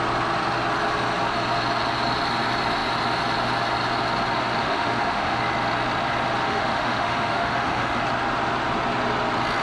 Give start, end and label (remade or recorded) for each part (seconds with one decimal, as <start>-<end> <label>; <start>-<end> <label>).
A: 0.0-4.6 recorded; 4.6-5.4 remade; 5.4-6.4 recorded; 6.4-8.0 remade; 8.0-9.6 recorded